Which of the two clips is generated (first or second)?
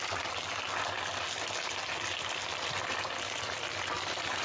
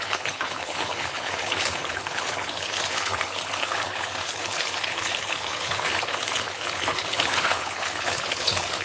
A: second